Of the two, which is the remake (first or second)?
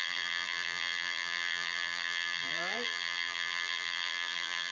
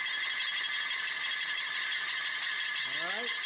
first